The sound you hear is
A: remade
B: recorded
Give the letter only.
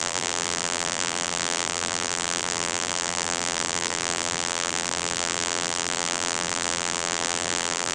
A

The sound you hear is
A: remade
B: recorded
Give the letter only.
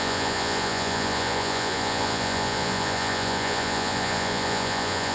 A